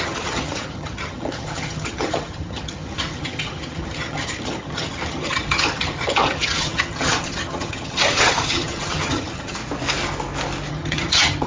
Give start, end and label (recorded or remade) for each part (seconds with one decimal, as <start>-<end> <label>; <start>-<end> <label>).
0.0-9.6 remade; 9.6-10.7 recorded; 10.7-11.5 remade